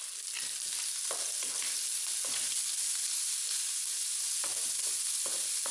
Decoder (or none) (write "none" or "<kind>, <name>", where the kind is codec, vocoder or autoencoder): none